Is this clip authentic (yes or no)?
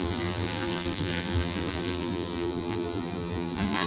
no